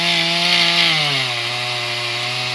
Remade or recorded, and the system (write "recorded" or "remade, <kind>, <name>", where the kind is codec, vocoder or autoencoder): recorded